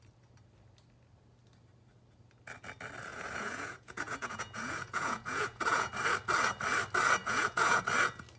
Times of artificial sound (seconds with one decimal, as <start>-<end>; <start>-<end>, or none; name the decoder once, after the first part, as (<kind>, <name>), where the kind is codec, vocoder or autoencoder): 3.1-5.9 (vocoder, Vocos); 7.2-7.8